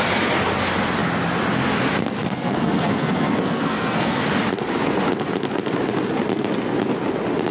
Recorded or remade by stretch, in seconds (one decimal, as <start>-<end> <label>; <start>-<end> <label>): 0.0-2.2 recorded; 2.2-4.2 remade; 4.2-7.5 recorded